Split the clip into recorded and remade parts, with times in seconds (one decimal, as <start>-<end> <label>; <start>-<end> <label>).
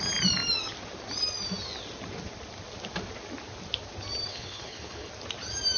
0.0-4.3 recorded; 4.3-5.1 remade; 5.1-5.8 recorded